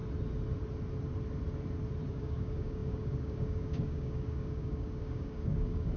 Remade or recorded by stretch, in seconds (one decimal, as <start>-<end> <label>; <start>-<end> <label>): 0.0-2.1 recorded; 2.1-6.0 remade